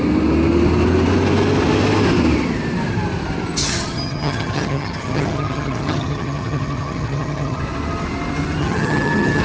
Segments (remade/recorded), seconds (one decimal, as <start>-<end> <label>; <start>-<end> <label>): 0.0-3.6 recorded; 3.6-7.6 remade; 7.6-8.6 recorded; 8.6-9.4 remade

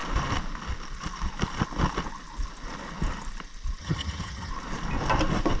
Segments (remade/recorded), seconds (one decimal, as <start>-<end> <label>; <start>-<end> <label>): 0.0-3.8 recorded; 3.8-4.5 remade; 4.5-5.6 recorded

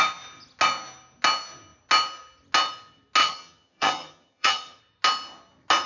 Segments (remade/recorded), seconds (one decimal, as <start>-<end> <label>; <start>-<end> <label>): 0.0-3.2 recorded; 3.2-4.8 remade; 4.8-5.9 recorded

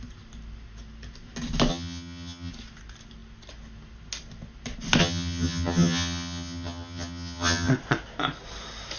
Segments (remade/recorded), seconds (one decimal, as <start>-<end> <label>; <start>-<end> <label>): 0.0-1.7 recorded; 1.7-2.5 remade; 2.5-5.0 recorded; 5.0-7.7 remade; 7.7-9.0 recorded

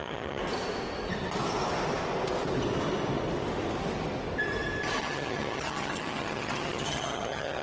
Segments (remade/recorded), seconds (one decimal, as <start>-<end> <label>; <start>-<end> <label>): 0.0-0.4 remade; 0.4-5.0 recorded; 5.0-7.6 remade

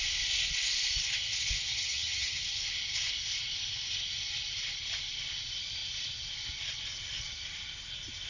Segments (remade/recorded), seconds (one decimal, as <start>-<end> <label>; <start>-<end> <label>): 0.0-1.7 recorded; 1.7-2.4 remade; 2.4-8.3 recorded

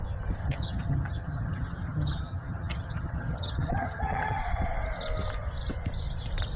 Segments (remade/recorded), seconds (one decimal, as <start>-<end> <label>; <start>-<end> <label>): 0.0-0.4 recorded; 0.4-4.4 remade; 4.4-6.6 recorded

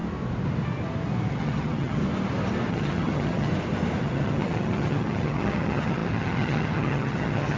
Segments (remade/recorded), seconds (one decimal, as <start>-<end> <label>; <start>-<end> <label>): 0.0-1.3 recorded; 1.3-2.0 remade; 2.0-2.7 recorded; 2.7-3.5 remade; 3.5-4.0 recorded; 4.0-7.6 remade